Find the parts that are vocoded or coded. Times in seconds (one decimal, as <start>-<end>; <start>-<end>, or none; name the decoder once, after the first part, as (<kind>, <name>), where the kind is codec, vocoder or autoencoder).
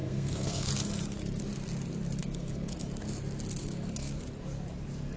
0.0-0.7 (codec, SNAC); 2.2-2.7; 3.6-4.2